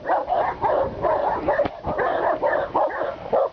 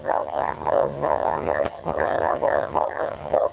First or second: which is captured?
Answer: first